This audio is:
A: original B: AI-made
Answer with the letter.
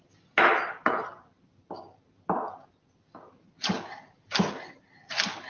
A